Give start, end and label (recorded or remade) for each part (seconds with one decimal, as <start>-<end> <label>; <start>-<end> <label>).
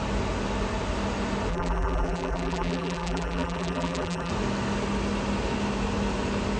0.0-1.5 recorded; 1.5-4.3 remade; 4.3-6.6 recorded